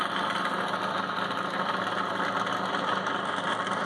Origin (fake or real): real